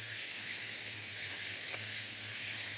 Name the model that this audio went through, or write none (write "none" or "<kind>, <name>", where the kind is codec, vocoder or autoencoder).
codec, SNAC